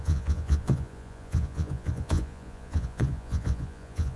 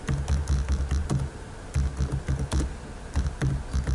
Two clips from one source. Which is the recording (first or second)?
second